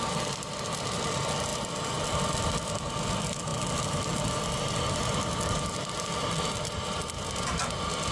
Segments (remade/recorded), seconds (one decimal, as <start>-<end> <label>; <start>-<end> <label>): 0.0-8.1 recorded